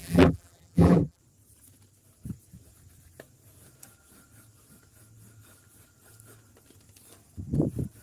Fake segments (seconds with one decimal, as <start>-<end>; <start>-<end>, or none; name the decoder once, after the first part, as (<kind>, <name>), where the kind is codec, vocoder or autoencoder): 0.0-1.2 (vocoder, BigVGAN v2)